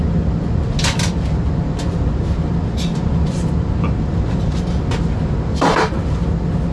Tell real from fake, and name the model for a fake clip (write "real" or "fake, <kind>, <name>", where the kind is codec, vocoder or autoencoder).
real